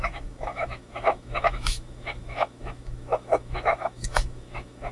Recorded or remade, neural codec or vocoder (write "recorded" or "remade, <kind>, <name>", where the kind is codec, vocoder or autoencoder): remade, autoencoder, DAC-VAE